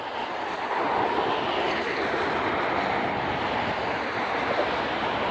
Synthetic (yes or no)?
no